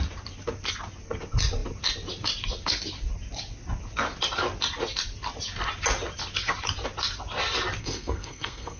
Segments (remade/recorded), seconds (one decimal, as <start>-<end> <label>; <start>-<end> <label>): 0.0-7.8 recorded; 7.8-8.8 remade

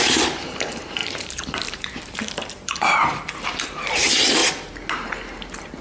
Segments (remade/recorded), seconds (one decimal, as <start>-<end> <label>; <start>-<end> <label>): 0.0-4.4 remade; 4.4-5.8 recorded